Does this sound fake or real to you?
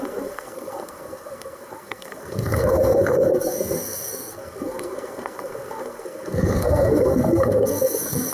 fake